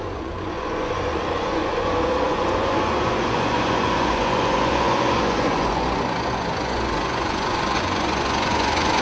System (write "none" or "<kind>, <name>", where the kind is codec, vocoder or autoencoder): vocoder, Vocos